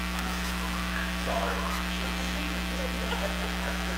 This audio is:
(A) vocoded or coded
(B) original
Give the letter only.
A